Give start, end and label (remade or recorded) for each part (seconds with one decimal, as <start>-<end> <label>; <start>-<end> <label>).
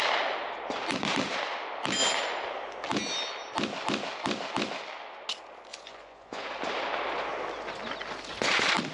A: 0.0-5.7 recorded; 5.7-6.4 remade; 6.4-8.9 recorded